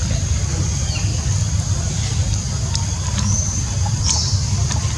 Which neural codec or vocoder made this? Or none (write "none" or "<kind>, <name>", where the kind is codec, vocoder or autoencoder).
none